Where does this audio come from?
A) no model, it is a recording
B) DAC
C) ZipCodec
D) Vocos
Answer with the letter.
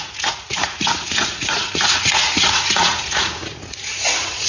D